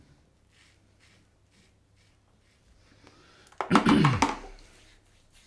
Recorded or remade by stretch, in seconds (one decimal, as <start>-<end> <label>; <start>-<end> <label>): 0.0-5.5 recorded